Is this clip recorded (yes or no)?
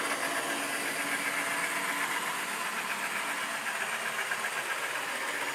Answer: yes